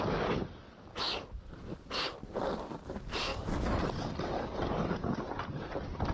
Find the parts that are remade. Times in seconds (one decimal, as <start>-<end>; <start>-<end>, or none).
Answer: none